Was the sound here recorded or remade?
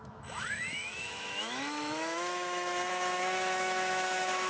remade